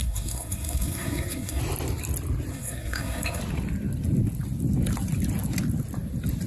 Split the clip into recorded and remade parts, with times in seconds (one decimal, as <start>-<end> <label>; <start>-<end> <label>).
0.0-1.6 remade; 1.6-2.5 recorded; 2.5-3.4 remade; 3.4-6.5 recorded

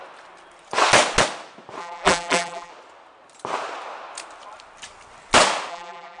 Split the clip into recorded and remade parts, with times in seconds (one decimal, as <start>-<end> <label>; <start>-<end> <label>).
0.0-1.8 recorded; 1.8-2.7 remade; 2.7-5.7 recorded; 5.7-6.2 remade

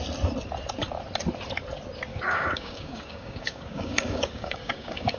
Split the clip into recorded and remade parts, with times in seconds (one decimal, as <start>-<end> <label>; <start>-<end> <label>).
0.0-2.1 recorded; 2.1-5.2 remade

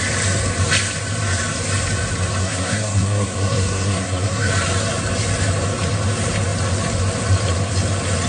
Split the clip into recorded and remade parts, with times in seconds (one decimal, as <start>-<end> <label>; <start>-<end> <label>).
0.0-2.4 recorded; 2.4-4.5 remade; 4.5-8.3 recorded